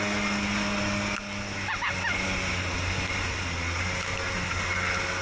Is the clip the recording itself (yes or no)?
yes